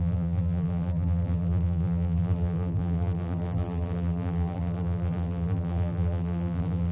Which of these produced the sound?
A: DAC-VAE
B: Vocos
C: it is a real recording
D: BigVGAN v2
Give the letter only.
D